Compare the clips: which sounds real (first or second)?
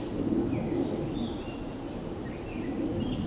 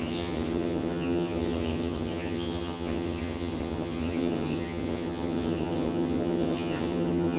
first